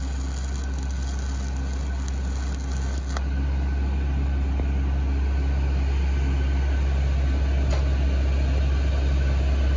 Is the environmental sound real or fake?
real